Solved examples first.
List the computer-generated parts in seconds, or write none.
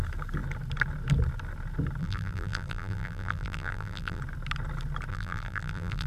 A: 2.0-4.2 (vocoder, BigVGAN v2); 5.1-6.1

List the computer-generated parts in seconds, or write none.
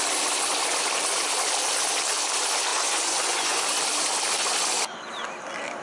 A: 2.7-3.6 (vocoder, Vocos)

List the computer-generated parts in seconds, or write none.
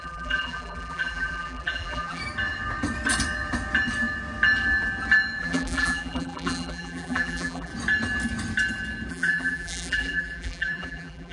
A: 0.0-2.2 (vocoder, BigVGAN v2); 5.4-7.7; 9.1-11.3